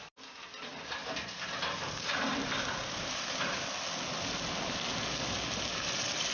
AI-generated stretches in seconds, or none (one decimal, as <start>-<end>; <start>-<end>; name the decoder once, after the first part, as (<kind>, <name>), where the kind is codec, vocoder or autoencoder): 0.7-3.5 (vocoder, BigVGAN v2)